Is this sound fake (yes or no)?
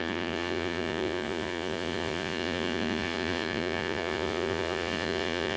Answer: yes